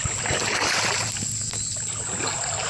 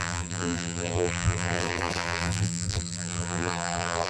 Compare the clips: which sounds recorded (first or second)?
first